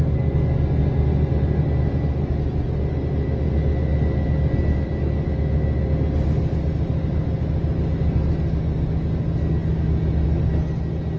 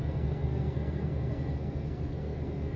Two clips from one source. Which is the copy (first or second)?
second